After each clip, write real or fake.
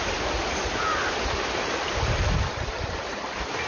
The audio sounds real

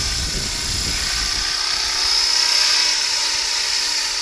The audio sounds real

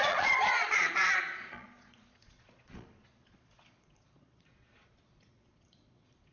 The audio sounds fake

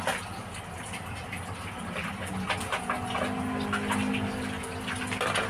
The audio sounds real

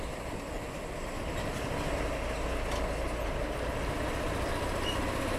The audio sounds real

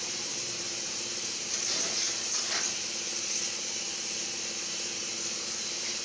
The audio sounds fake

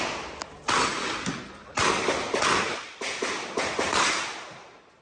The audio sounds real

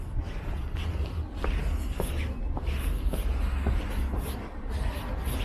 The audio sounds real